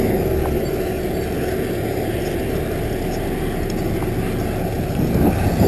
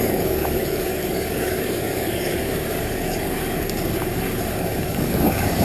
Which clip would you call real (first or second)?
first